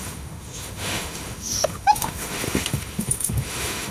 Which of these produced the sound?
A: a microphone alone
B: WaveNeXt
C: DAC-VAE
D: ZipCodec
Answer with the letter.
C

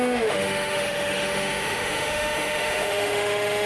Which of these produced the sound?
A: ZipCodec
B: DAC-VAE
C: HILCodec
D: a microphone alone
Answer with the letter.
B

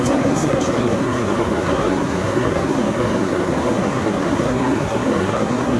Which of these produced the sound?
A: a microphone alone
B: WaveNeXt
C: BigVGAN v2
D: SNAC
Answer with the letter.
D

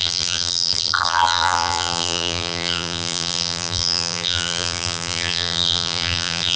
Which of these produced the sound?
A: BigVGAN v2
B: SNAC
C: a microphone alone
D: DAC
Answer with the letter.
A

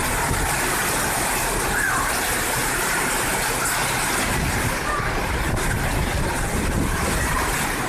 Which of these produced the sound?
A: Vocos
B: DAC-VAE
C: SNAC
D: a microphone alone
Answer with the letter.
D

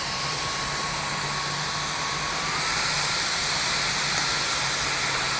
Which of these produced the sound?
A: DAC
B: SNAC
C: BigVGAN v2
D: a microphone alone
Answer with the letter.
D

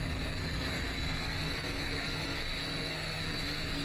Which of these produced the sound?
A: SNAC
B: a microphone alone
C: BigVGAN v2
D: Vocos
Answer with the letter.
A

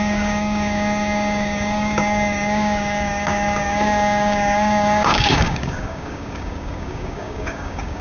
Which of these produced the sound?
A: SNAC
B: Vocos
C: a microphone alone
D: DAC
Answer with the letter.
D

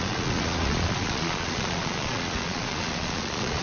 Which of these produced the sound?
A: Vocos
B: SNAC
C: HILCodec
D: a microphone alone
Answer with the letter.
A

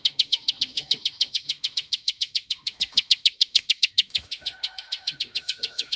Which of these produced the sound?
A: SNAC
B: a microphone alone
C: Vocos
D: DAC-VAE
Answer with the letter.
D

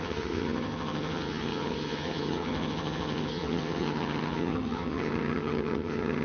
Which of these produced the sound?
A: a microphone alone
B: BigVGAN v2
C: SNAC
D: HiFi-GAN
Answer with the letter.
D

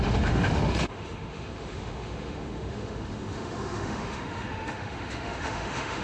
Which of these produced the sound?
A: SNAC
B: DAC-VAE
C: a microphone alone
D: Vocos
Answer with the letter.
B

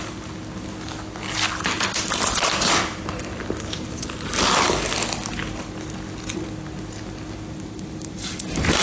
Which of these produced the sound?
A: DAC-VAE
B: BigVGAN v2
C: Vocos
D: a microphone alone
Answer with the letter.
D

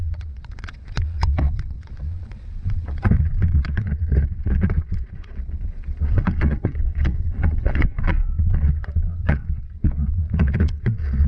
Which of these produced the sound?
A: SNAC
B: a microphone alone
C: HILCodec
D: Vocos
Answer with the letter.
D